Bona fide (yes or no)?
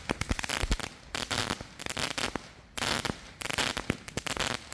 yes